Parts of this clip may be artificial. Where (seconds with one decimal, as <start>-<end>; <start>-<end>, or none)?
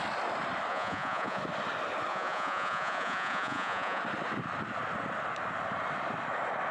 0.7-1.4; 2.1-4.0